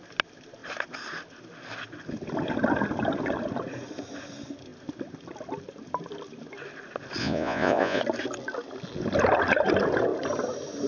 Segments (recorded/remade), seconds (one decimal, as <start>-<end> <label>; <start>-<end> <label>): 0.0-7.2 recorded; 7.2-8.0 remade; 8.0-10.9 recorded